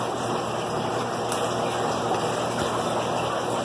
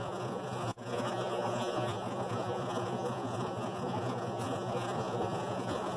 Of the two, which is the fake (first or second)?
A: second